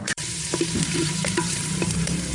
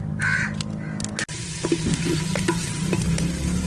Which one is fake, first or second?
first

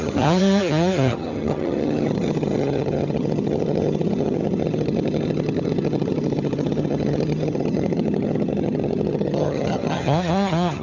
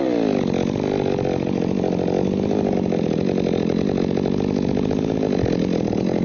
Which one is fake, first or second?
first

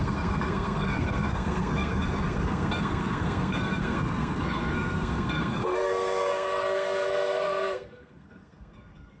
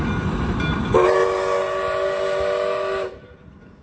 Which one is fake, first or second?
first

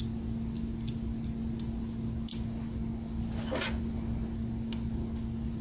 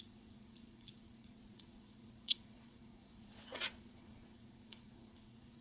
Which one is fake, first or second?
second